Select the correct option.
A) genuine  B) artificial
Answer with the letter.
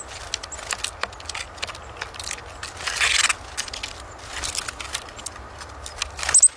A